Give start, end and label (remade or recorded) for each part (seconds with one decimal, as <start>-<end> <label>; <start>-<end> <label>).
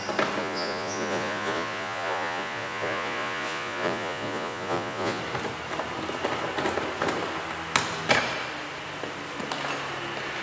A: 0.0-0.4 recorded; 0.4-5.2 remade; 5.2-10.4 recorded